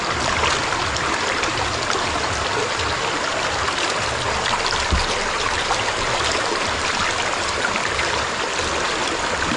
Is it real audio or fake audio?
real